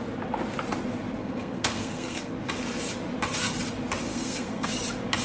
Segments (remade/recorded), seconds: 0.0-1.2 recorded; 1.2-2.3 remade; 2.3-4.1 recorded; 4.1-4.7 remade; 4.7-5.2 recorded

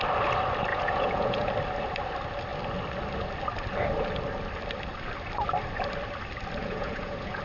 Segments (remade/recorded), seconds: 0.0-0.7 recorded; 0.7-1.5 remade; 1.5-6.6 recorded; 6.6-7.4 remade

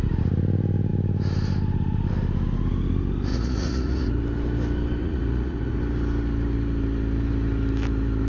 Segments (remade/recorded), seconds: 0.0-3.3 recorded; 3.3-4.2 remade; 4.2-5.0 recorded; 5.0-5.8 remade; 5.8-8.3 recorded

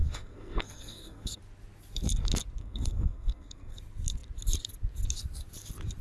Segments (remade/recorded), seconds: 0.0-1.4 remade; 1.4-2.6 recorded; 2.6-3.8 remade; 3.8-6.0 recorded

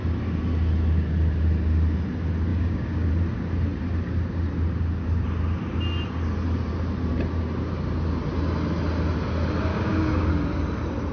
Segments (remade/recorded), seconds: 0.0-2.5 recorded; 2.5-3.1 remade; 3.1-9.7 recorded; 9.7-10.3 remade; 10.3-11.1 recorded

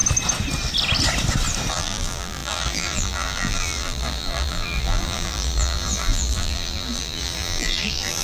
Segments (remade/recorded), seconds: 0.0-1.7 recorded; 1.7-8.2 remade

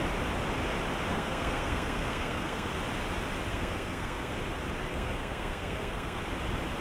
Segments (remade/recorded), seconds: 0.0-1.1 recorded; 1.1-2.7 remade; 2.7-3.5 recorded; 3.5-4.3 remade; 4.3-4.9 recorded; 4.9-6.2 remade; 6.2-6.8 recorded